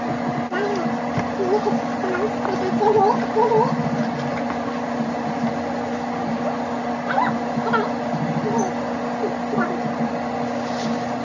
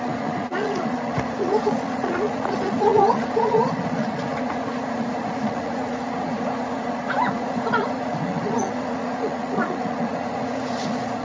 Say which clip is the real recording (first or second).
first